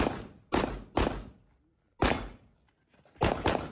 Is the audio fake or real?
real